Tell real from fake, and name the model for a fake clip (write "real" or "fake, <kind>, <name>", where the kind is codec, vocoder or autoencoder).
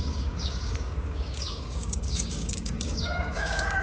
fake, codec, DAC